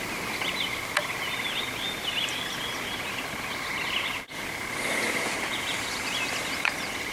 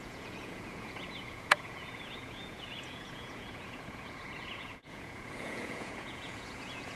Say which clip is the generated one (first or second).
second